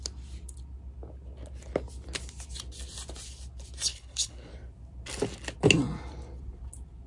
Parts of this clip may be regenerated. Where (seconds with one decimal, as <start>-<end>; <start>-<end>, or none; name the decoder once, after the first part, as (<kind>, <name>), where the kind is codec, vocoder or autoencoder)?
3.9-4.5 (codec, HILCodec)